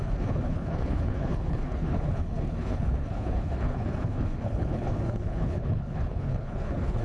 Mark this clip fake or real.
fake